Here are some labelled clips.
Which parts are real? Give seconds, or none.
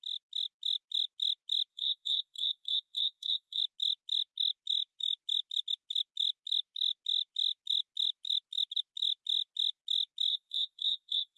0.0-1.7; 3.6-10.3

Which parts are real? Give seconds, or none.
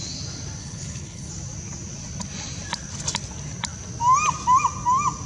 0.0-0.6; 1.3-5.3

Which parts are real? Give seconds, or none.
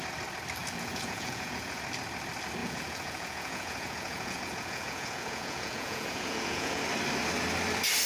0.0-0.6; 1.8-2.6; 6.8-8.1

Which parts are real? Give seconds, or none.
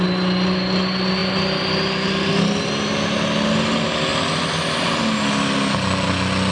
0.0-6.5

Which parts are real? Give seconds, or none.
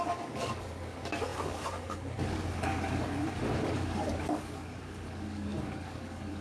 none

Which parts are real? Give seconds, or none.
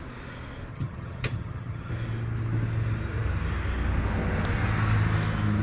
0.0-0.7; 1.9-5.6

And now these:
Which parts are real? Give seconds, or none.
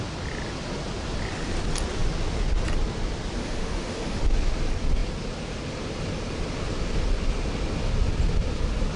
0.0-3.4; 4.2-9.0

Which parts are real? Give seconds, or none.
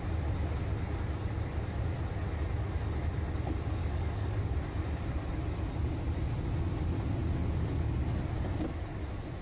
0.0-3.8; 4.5-9.4